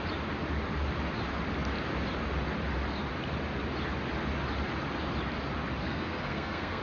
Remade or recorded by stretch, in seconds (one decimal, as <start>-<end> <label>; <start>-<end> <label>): 0.0-5.9 recorded; 5.9-6.8 remade